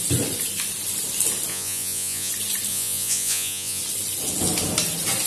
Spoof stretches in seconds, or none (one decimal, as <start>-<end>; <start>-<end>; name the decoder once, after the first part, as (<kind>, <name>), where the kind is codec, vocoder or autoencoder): 1.5-2.3 (vocoder, Vocos); 2.7-3.8